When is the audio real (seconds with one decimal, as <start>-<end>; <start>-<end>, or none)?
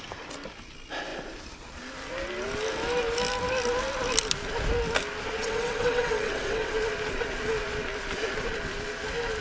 0.0-5.4; 6.7-9.4